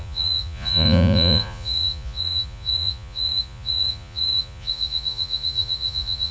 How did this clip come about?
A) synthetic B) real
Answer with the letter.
A